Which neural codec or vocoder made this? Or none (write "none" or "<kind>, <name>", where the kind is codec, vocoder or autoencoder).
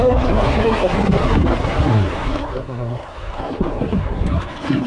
codec, SNAC